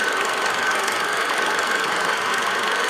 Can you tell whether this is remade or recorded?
remade